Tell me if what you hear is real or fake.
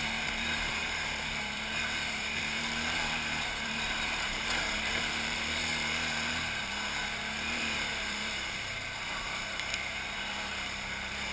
fake